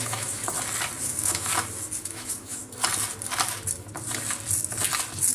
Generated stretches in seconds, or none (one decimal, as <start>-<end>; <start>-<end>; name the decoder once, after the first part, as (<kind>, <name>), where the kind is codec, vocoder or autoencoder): 0.0-0.4 (autoencoder, DAC-VAE); 1.0-1.5; 2.0-2.6